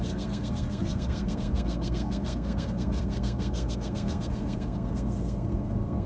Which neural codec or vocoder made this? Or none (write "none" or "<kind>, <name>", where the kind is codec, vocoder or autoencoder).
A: codec, SNAC